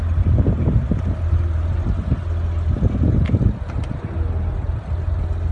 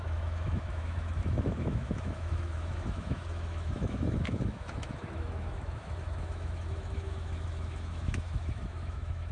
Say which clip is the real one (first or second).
first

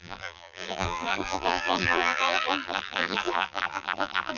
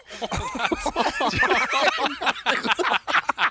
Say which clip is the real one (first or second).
second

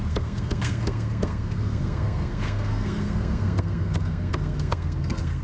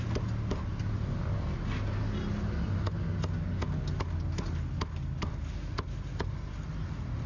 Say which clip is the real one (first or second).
second